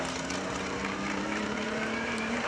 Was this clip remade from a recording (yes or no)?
yes